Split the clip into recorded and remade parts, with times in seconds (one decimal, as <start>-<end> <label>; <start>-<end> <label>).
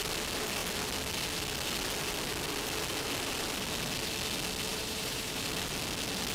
0.0-4.7 recorded; 4.7-5.4 remade; 5.4-6.3 recorded